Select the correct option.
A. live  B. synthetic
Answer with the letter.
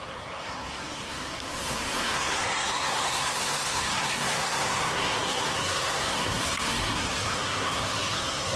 B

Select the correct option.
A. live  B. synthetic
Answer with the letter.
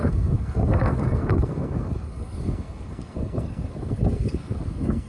B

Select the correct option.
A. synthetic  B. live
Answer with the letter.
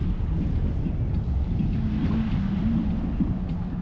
B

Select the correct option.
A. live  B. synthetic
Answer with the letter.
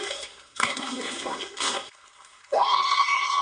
B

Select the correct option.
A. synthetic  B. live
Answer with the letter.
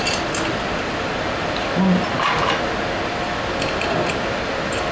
B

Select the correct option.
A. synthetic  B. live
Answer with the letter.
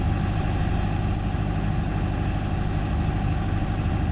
B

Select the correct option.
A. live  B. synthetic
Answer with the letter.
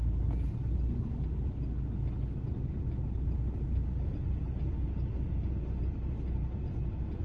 A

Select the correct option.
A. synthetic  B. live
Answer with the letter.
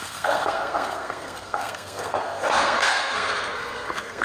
A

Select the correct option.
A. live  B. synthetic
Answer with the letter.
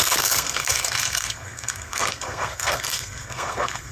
B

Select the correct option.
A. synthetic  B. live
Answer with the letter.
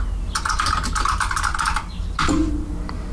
B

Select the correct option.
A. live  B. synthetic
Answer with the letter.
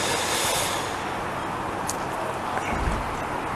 A